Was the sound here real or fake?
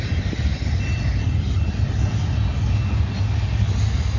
real